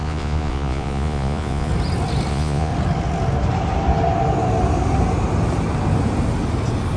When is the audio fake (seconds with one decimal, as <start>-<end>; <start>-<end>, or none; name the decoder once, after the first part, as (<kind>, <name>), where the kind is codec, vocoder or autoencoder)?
0.0-1.7 (vocoder, Vocos); 2.3-2.7